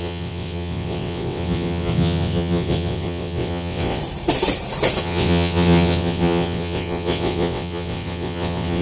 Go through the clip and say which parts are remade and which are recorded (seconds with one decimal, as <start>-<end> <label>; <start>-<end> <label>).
0.0-4.0 remade; 4.0-5.0 recorded; 5.0-8.8 remade